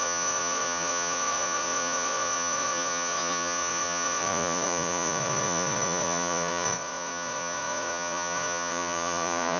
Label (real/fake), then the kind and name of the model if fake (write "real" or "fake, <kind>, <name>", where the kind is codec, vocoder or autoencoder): fake, vocoder, Vocos